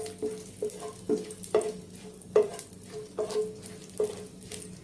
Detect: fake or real real